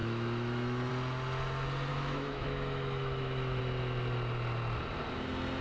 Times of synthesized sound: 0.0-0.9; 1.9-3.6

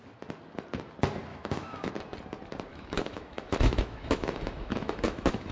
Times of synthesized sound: 1.3-1.9; 2.7-5.5